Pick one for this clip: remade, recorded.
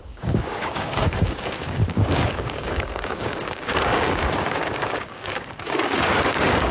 remade